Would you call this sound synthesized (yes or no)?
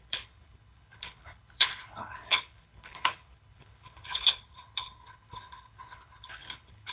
yes